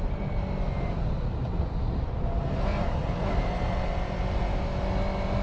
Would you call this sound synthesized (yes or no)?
no